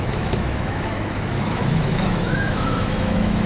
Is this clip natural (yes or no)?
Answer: no